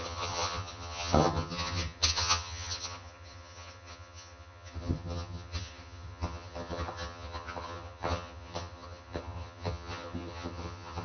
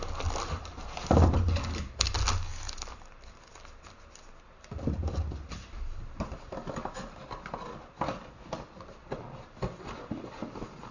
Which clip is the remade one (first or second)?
first